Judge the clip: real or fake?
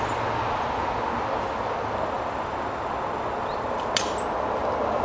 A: real